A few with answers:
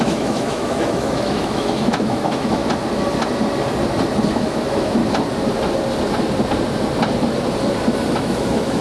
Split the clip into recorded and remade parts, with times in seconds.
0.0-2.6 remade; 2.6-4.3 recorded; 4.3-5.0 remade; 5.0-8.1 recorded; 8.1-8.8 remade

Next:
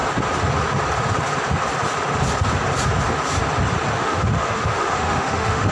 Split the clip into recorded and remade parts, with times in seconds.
0.0-3.9 recorded; 3.9-5.7 remade

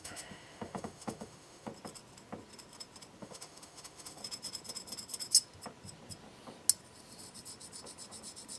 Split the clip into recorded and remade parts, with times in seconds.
0.0-1.7 remade; 1.7-3.2 recorded; 3.2-4.2 remade; 4.2-8.6 recorded

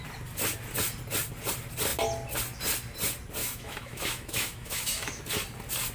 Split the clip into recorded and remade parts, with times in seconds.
0.0-3.4 recorded; 3.4-5.2 remade; 5.2-5.9 recorded

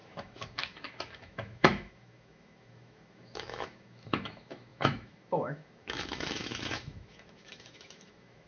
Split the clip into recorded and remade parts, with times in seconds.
0.0-8.5 remade

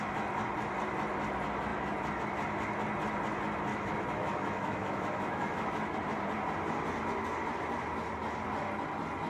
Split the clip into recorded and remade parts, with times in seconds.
0.0-3.7 recorded; 3.7-6.0 remade; 6.0-9.3 recorded

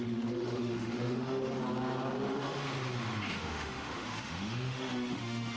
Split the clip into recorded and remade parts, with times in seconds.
0.0-1.6 remade; 1.6-2.3 recorded; 2.3-2.7 remade; 2.7-3.3 recorded; 3.3-5.6 remade

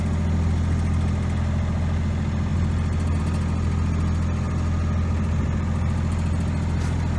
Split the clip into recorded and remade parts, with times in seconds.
0.0-7.2 recorded